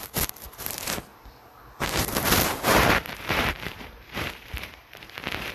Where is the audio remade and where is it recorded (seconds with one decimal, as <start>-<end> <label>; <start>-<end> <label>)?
0.0-1.1 remade; 1.1-2.0 recorded; 2.0-5.5 remade